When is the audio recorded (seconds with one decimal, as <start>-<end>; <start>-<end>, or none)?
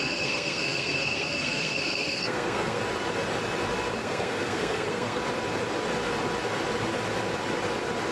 2.8-4.0; 5.2-8.1